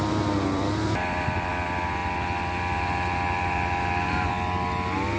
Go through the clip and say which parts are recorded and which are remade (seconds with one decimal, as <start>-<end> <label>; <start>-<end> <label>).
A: 0.0-1.5 remade; 1.5-5.2 recorded